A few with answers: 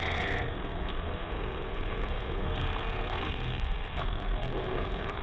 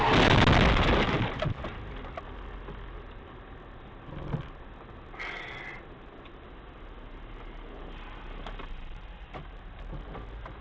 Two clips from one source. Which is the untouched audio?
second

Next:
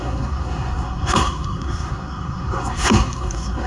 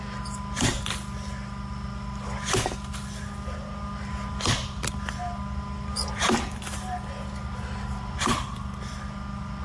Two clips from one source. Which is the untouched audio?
second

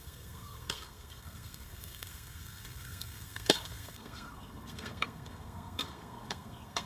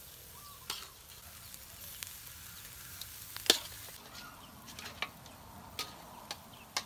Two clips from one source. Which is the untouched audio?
second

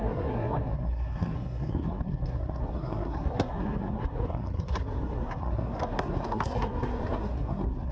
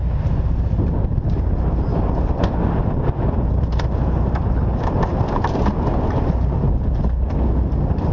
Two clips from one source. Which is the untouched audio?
second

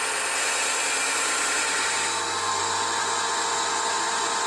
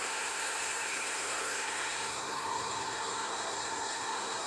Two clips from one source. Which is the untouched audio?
first